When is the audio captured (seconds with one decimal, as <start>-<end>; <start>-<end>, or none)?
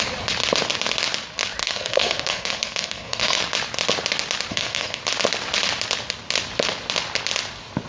0.0-1.6; 3.4-4.5; 5.0-7.9